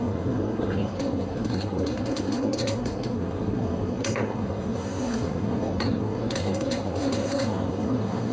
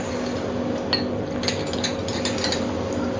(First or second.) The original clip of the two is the second